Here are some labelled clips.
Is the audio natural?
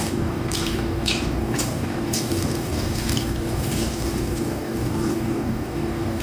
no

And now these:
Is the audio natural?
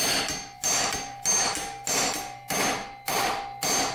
yes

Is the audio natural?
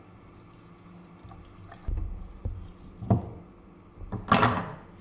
yes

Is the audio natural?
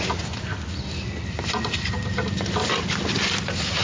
yes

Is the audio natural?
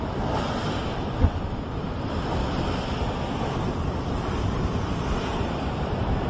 yes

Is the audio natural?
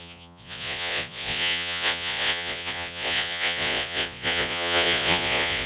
no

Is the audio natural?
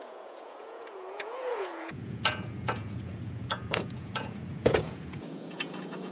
no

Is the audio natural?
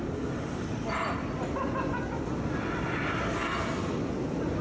yes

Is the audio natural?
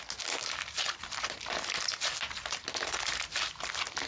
yes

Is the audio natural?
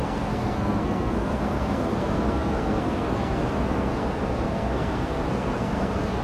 no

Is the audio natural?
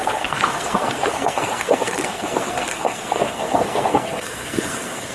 no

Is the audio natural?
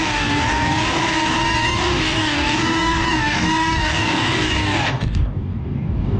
no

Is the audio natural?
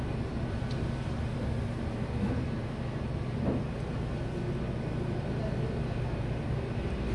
yes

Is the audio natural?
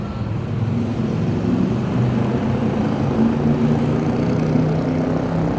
yes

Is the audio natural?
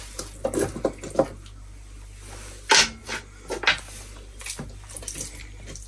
yes